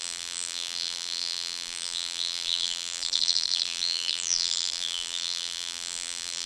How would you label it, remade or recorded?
remade